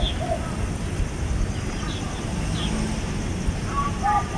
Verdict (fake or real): real